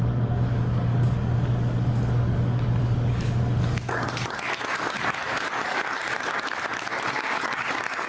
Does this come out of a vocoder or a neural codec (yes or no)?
yes